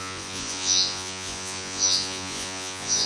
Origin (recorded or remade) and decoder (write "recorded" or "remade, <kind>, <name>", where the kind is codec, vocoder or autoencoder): remade, vocoder, Vocos